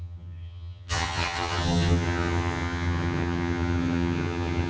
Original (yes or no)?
no